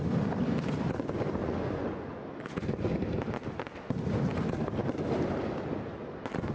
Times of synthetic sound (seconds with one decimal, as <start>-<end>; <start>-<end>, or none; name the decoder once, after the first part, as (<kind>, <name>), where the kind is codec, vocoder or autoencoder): 1.4-2.1 (vocoder, Vocos)